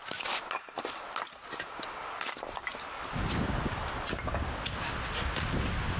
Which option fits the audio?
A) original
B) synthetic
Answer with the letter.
A